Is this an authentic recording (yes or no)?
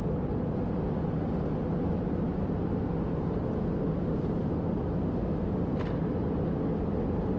yes